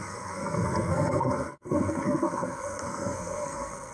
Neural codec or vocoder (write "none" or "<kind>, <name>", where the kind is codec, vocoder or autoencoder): codec, SNAC